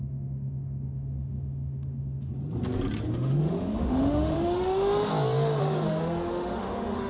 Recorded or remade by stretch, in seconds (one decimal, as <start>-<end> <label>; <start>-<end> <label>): 0.0-2.3 remade; 2.3-3.1 recorded; 3.1-5.1 remade; 5.1-5.6 recorded; 5.6-7.1 remade